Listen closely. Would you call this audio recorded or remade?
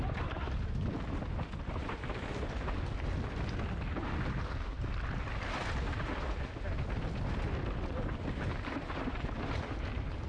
recorded